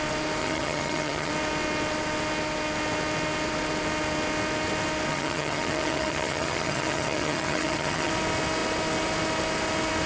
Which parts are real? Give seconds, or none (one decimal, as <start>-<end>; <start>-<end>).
0.0-0.4; 1.3-5.1; 8.1-10.1